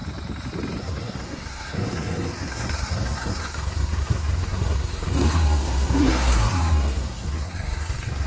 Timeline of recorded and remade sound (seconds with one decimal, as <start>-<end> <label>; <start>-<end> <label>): 0.0-0.8 recorded; 0.8-8.3 remade

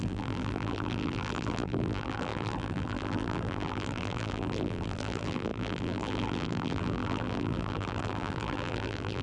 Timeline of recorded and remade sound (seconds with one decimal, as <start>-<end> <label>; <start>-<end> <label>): 0.0-9.2 remade

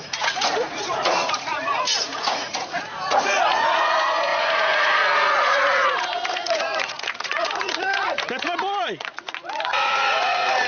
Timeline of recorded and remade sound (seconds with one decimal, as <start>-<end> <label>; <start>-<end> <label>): 0.0-10.7 remade

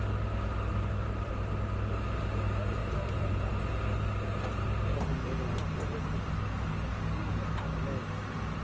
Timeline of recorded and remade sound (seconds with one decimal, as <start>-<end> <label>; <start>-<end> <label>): 0.0-0.7 recorded; 0.7-1.3 remade; 1.3-2.8 recorded; 2.8-3.5 remade; 3.5-5.1 recorded; 5.1-6.7 remade; 6.7-8.6 recorded

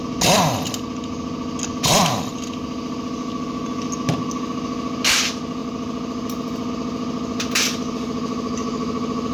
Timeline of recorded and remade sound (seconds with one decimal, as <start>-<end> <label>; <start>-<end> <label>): 0.0-9.3 recorded

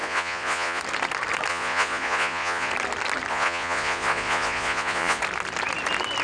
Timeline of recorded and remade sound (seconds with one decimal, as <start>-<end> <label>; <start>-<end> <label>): 0.0-0.8 remade; 0.8-1.5 recorded; 1.5-2.7 remade; 2.7-3.3 recorded; 3.3-5.2 remade; 5.2-6.2 recorded